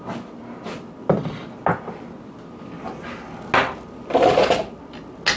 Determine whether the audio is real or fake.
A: real